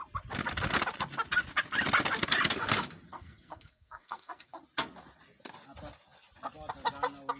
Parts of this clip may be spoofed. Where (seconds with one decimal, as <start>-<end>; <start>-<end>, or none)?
3.1-4.6